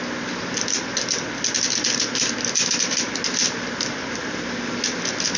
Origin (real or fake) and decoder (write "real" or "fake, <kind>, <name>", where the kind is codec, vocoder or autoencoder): real